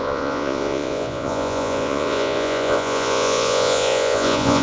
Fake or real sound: fake